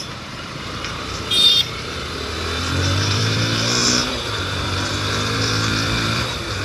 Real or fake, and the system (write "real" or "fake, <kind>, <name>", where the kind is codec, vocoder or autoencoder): fake, vocoder, BigVGAN v2